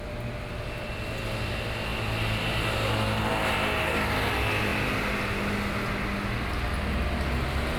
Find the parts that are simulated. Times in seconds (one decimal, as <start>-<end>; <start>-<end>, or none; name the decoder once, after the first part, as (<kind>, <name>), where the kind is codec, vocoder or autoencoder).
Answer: none